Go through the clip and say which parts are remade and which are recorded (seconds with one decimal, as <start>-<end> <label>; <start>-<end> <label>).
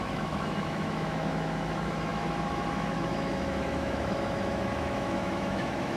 0.0-6.0 remade